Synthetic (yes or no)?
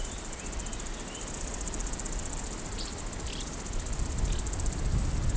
yes